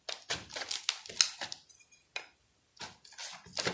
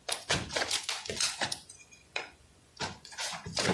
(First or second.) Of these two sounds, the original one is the first